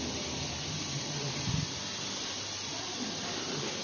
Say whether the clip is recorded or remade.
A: remade